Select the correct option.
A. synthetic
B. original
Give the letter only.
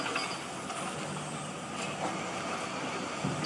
B